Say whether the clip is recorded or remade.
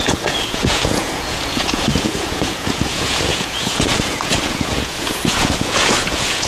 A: remade